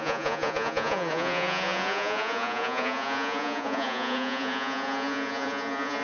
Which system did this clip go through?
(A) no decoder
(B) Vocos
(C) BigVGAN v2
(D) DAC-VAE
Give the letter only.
B